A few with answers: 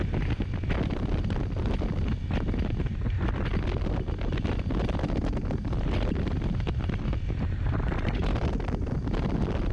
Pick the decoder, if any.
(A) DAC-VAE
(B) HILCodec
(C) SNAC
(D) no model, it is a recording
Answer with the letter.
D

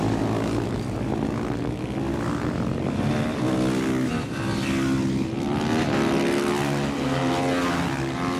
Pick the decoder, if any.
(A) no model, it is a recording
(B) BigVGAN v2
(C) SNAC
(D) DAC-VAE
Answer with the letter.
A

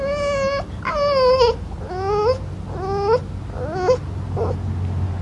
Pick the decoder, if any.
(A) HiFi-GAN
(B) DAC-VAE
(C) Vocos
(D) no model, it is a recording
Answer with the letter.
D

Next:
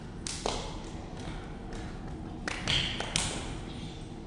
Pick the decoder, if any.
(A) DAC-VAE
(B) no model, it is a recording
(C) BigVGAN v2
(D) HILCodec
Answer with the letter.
B